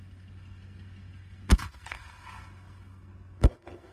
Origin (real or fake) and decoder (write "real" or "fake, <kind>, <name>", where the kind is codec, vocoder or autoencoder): fake, codec, SNAC